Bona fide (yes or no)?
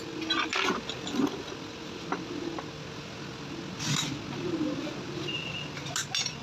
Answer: yes